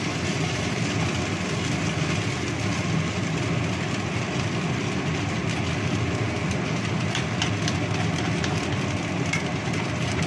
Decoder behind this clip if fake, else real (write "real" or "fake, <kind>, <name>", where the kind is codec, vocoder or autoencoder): real